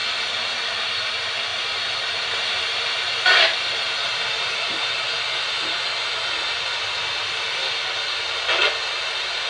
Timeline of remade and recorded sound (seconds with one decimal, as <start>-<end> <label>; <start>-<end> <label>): 0.0-0.6 recorded; 0.6-7.6 remade; 7.6-9.5 recorded